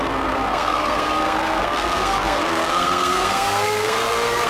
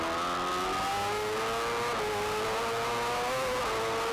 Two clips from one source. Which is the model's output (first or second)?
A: first